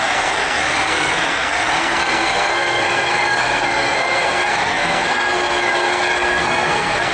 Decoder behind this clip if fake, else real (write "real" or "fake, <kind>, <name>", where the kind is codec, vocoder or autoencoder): fake, codec, SNAC